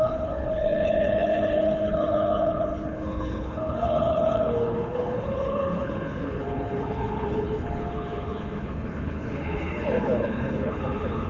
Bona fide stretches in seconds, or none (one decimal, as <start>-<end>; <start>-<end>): none